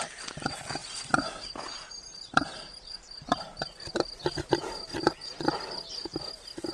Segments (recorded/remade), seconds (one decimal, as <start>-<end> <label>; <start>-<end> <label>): 0.0-6.7 recorded